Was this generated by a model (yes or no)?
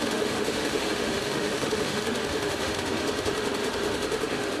yes